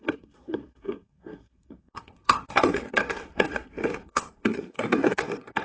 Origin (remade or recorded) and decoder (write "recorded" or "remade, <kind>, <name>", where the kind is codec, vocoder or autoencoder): remade, codec, SNAC